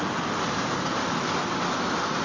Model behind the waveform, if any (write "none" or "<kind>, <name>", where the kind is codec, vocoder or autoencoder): none